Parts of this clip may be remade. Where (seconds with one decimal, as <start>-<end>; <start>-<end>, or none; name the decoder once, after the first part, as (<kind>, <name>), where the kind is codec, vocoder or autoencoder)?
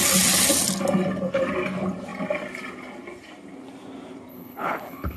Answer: 4.3-5.2 (codec, HILCodec)